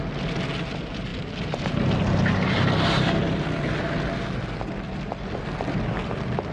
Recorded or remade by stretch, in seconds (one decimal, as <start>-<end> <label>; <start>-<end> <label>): 0.0-6.5 recorded